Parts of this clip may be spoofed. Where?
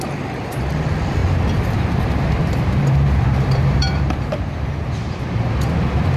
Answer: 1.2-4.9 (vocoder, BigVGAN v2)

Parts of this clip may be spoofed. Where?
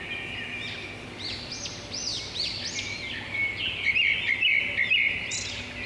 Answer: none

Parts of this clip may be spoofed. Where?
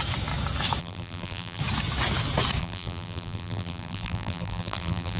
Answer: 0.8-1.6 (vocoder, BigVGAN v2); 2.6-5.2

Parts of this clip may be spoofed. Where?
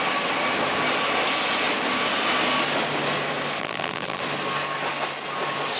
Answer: 3.6-4.2 (vocoder, BigVGAN v2)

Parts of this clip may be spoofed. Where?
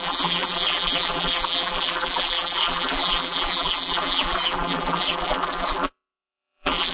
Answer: 0.0-6.9 (vocoder, BigVGAN v2)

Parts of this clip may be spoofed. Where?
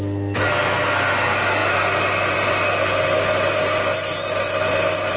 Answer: none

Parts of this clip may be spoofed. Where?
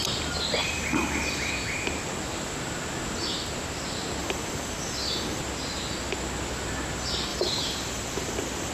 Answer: 0.6-1.5 (vocoder, BigVGAN v2); 4.2-5.4; 7.3-8.7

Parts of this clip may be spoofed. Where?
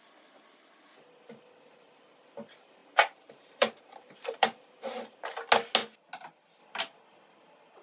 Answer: 2.8-5.3 (vocoder, BigVGAN v2)